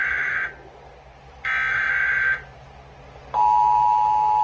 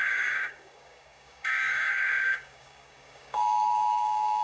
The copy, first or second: second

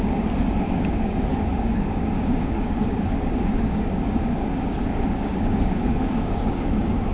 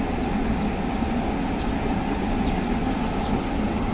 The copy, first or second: first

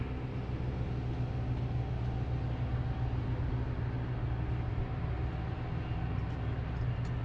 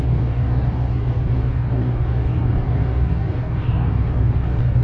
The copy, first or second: second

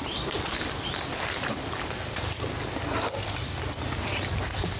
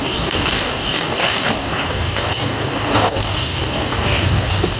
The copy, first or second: second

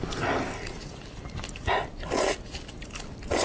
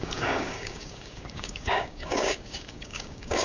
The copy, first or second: second